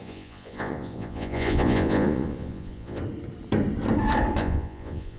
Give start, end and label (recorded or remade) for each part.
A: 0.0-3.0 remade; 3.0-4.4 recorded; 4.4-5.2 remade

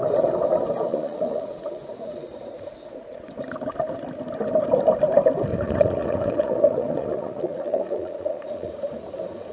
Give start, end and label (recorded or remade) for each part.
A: 0.0-0.9 recorded; 0.9-3.4 remade; 3.4-5.5 recorded; 5.5-8.7 remade; 8.7-9.5 recorded

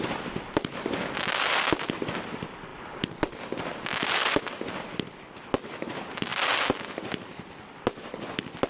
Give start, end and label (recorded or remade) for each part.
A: 0.0-8.7 recorded

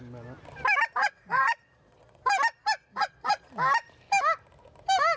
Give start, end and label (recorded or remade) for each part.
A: 0.0-1.0 recorded; 1.0-2.3 remade; 2.3-2.8 recorded; 2.8-3.5 remade; 3.5-5.2 recorded

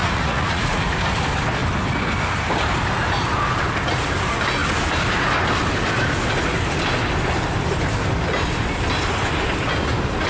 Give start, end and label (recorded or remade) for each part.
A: 0.0-0.8 remade; 0.8-10.3 recorded

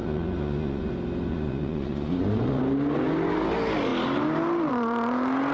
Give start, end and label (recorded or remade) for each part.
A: 0.0-0.9 remade; 0.9-1.3 recorded; 1.3-2.6 remade; 2.6-5.5 recorded

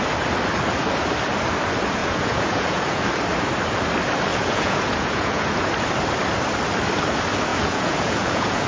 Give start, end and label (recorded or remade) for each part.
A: 0.0-2.0 recorded; 2.0-3.0 remade; 3.0-4.3 recorded; 4.3-5.7 remade; 5.7-7.5 recorded; 7.5-8.7 remade

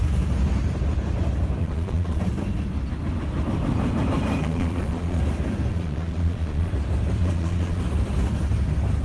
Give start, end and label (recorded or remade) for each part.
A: 0.0-1.6 recorded; 1.6-2.2 remade; 2.2-4.4 recorded; 4.4-5.2 remade; 5.2-5.7 recorded; 5.7-6.7 remade; 6.7-7.2 recorded; 7.2-7.8 remade; 7.8-9.0 recorded